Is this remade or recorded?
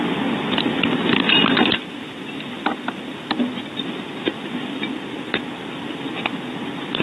recorded